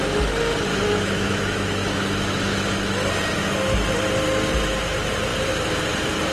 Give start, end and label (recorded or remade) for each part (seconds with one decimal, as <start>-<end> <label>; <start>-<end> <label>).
0.0-0.7 recorded; 0.7-3.1 remade; 3.1-6.3 recorded